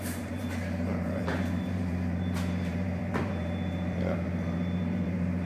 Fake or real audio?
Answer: fake